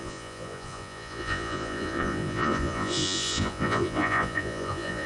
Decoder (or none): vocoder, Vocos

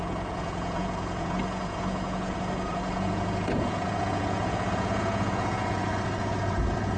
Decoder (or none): vocoder, Vocos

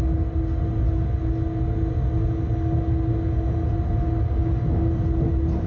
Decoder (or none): none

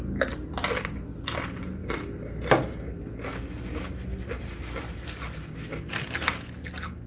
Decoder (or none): none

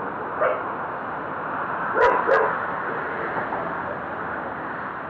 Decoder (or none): none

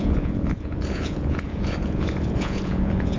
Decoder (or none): vocoder, Vocos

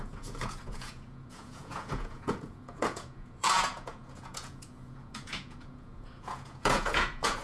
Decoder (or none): vocoder, Vocos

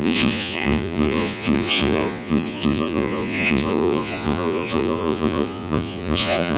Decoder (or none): vocoder, Vocos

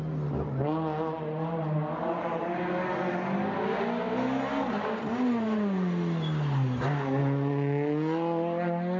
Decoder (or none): none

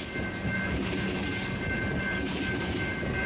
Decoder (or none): none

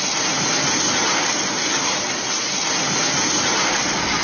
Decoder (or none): none